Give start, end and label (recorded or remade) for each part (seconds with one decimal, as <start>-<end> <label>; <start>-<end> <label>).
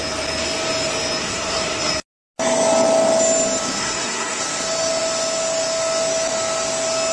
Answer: 0.0-1.2 recorded; 1.2-1.9 remade; 1.9-3.8 recorded; 3.8-4.4 remade; 4.4-7.1 recorded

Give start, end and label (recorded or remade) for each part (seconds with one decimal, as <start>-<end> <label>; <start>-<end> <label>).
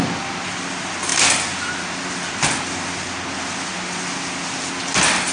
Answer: 0.0-5.3 recorded